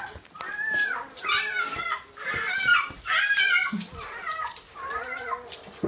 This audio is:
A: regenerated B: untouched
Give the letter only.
B